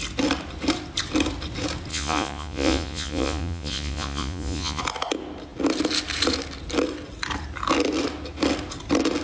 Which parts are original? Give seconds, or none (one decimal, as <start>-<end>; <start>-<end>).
0.0-1.9; 4.8-9.2